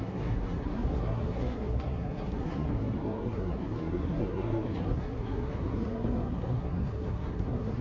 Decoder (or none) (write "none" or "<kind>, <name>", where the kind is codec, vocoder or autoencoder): codec, SNAC